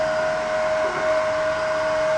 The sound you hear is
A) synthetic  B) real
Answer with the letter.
B